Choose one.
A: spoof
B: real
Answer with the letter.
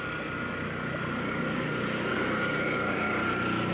B